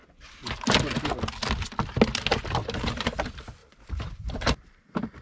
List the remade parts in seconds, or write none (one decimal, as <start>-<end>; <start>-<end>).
2.6-3.2; 3.6-5.2